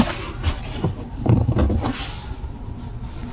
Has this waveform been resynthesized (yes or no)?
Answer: no